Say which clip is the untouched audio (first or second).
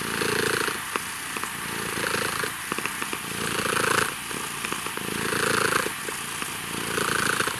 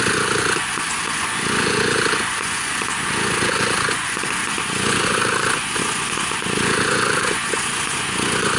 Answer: first